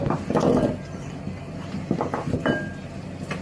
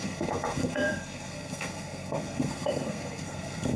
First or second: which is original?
first